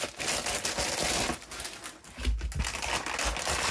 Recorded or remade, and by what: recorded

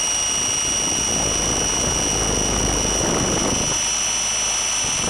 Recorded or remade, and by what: recorded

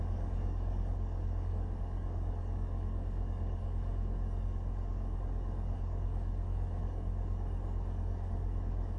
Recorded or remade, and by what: remade, codec, DAC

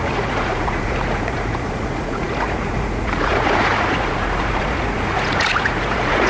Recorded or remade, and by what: remade, vocoder, Vocos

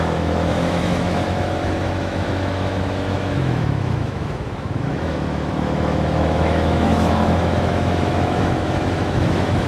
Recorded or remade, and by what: remade, autoencoder, DAC-VAE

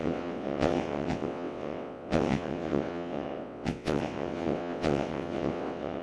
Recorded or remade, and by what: remade, vocoder, WaveNeXt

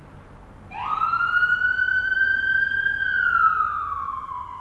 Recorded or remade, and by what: recorded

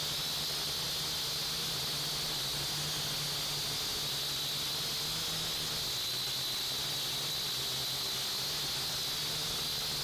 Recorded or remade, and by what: recorded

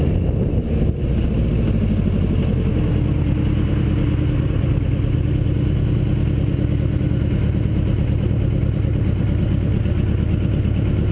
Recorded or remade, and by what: recorded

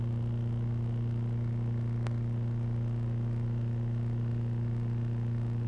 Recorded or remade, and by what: recorded